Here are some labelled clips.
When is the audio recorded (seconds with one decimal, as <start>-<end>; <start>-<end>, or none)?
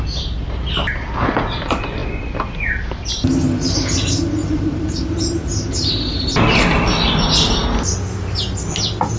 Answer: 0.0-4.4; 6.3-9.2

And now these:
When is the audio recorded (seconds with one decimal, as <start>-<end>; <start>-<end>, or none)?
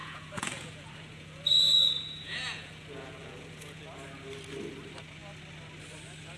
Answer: 3.8-6.4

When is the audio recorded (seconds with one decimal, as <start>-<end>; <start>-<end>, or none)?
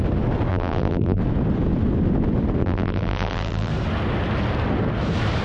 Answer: 0.0-0.5; 1.2-2.6; 3.7-5.4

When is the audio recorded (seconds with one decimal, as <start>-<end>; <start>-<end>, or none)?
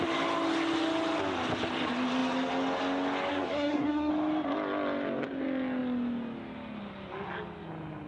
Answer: 0.0-3.3; 4.1-8.1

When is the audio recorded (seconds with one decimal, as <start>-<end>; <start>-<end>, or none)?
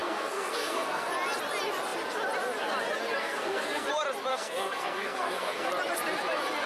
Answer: 1.1-3.2; 3.9-4.3; 5.7-6.7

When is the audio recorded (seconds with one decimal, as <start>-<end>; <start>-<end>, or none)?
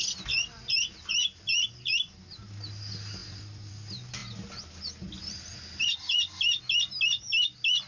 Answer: 0.0-3.2; 3.7-7.9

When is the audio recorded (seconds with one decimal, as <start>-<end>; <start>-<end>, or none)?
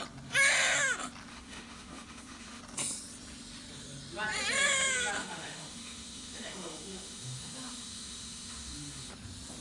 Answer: 0.0-1.3; 2.6-5.2; 9.1-9.6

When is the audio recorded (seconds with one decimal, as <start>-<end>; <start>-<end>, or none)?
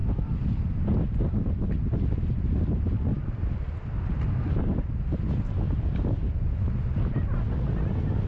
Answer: 0.0-8.3